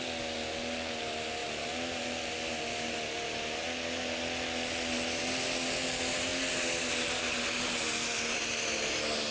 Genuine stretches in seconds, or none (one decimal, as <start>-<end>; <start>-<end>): 0.0-9.3